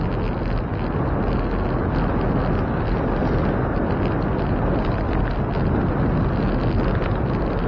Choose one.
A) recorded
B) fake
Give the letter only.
A